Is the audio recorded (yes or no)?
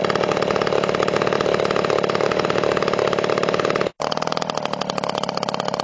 yes